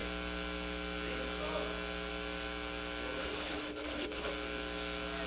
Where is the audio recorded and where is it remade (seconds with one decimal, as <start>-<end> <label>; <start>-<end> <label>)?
0.0-3.2 recorded; 3.2-4.3 remade; 4.3-5.3 recorded